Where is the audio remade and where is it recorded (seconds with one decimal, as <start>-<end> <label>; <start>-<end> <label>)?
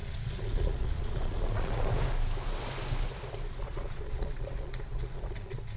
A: 0.0-1.9 remade; 1.9-3.6 recorded; 3.6-5.8 remade